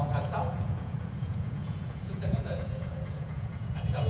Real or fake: fake